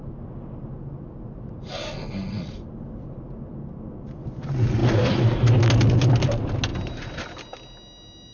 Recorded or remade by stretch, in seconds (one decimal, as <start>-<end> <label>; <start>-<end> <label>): 0.0-4.8 recorded; 4.8-5.6 remade; 5.6-6.7 recorded; 6.7-7.4 remade; 7.4-8.3 recorded